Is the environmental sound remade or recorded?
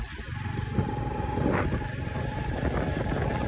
recorded